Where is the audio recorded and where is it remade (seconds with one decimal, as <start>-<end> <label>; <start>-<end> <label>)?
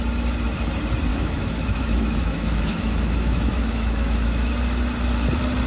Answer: 0.0-1.1 recorded; 1.1-4.5 remade; 4.5-5.7 recorded